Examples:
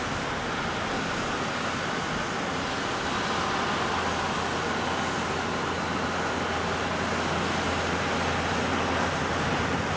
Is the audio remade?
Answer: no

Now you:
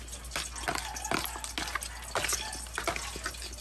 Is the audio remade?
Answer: no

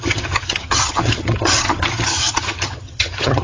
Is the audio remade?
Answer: yes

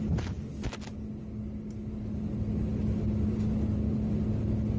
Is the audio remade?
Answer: no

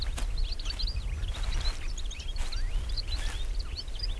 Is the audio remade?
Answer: no